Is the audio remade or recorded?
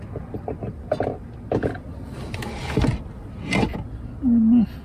recorded